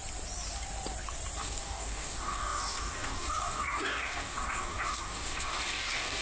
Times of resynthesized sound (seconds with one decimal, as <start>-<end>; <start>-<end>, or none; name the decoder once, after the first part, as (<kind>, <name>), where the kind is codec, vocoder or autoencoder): 1.4-6.2 (codec, DAC)